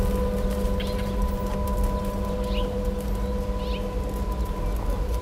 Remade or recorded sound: recorded